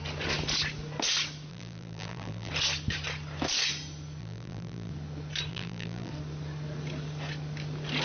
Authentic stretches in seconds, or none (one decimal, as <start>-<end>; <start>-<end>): 0.0-1.5; 2.5-4.2; 4.9-5.5; 6.1-8.0